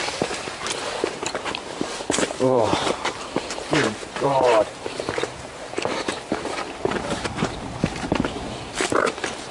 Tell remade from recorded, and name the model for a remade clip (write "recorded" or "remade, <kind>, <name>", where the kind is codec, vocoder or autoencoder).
remade, vocoder, BigVGAN v2